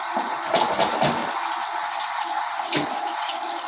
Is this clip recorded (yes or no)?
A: yes